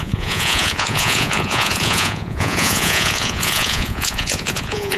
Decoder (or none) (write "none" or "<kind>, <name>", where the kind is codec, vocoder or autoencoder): vocoder, Vocos